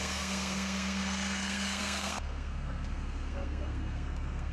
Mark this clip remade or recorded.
remade